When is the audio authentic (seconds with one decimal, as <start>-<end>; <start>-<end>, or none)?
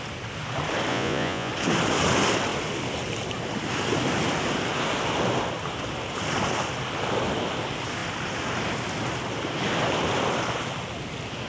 0.0-0.9; 1.5-11.5